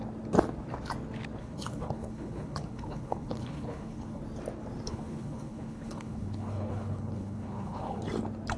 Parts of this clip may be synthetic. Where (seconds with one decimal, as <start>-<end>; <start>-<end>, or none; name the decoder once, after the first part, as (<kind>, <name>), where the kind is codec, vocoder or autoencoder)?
1.4-4.2 (codec, HILCodec); 4.9-8.0